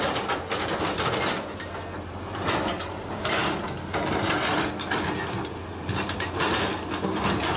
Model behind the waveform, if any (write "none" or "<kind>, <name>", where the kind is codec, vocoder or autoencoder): none